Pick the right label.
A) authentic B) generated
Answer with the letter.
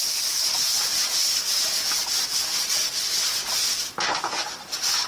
A